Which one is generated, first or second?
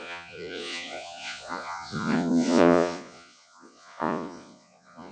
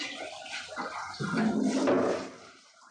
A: first